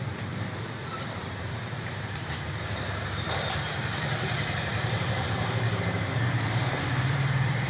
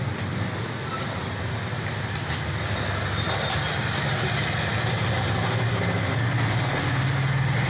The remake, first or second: first